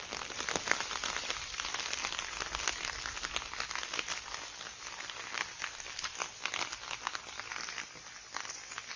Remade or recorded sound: recorded